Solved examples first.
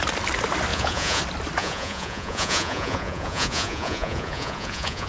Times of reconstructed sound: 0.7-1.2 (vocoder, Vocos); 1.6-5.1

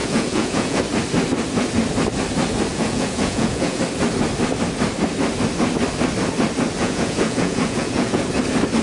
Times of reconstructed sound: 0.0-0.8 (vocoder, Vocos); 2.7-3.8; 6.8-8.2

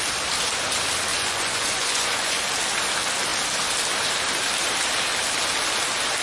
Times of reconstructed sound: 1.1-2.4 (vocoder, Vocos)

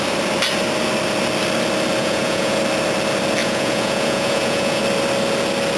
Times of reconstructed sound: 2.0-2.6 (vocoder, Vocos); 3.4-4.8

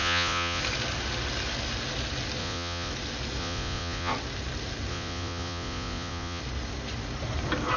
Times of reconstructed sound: 0.0-0.6 (vocoder, Vocos); 2.4-2.9; 3.4-4.1; 4.9-6.4

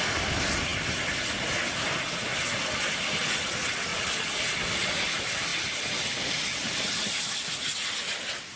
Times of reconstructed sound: none

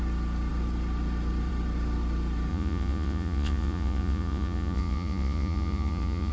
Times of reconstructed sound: 2.5-6.3 (vocoder, Vocos)